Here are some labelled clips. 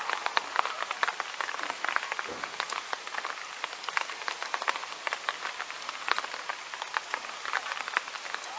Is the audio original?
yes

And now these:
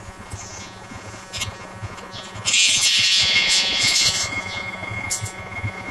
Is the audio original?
no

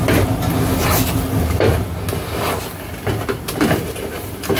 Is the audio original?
yes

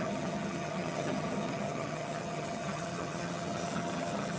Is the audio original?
no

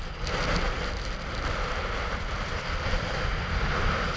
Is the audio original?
yes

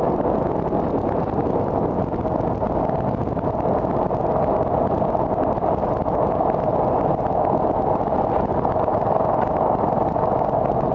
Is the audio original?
yes